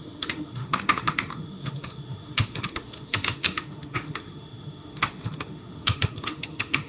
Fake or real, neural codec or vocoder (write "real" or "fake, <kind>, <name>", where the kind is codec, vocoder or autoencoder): fake, autoencoder, DAC-VAE